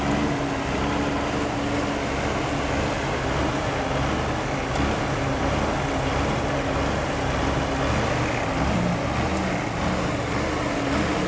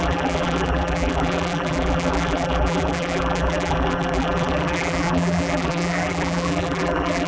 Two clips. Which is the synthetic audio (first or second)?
second